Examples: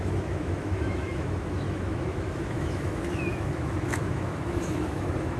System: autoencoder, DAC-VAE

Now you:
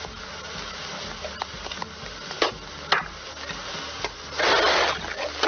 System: none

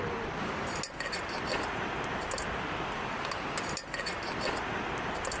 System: none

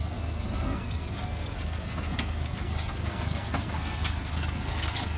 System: codec, SNAC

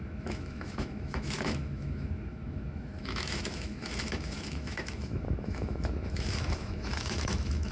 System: autoencoder, DAC-VAE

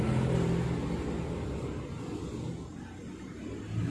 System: none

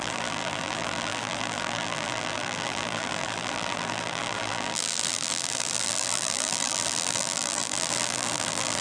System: vocoder, BigVGAN v2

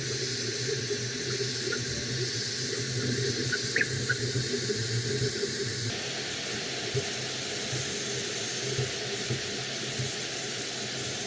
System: none